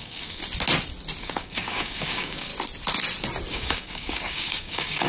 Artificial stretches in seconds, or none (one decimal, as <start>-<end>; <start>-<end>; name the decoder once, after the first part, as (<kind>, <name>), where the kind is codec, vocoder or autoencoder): 0.0-0.4 (codec, DAC); 1.2-2.5; 3.5-5.1